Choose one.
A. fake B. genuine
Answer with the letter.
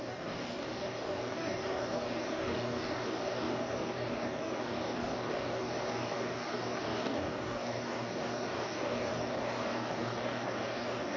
A